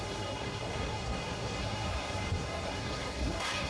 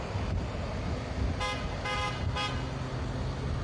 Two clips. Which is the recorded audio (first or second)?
second